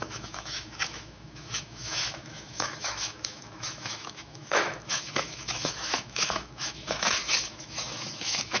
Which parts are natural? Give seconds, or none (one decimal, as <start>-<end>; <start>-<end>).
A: none